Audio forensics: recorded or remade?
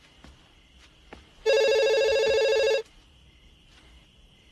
recorded